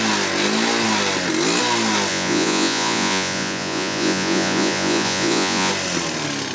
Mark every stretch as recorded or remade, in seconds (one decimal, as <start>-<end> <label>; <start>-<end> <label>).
0.0-2.1 recorded; 2.1-5.7 remade; 5.7-6.5 recorded